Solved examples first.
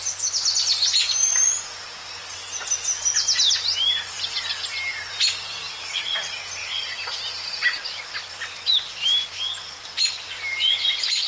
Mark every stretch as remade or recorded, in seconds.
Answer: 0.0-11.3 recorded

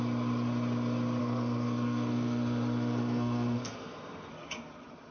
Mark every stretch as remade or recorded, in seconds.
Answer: 0.0-1.2 recorded; 1.2-4.3 remade; 4.3-5.1 recorded

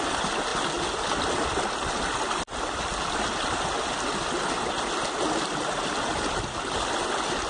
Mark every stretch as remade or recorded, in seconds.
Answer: 0.0-7.5 recorded

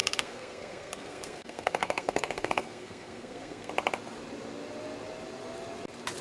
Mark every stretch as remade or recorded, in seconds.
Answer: 0.0-3.7 remade; 3.7-6.2 recorded

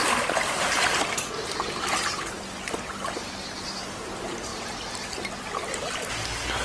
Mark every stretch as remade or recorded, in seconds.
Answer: 0.0-6.6 recorded